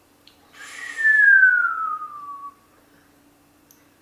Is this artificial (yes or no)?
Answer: no